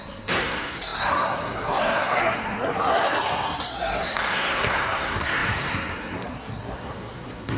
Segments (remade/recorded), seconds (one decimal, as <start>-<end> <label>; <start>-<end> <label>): 0.0-7.6 remade